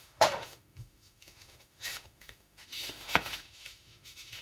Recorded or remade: remade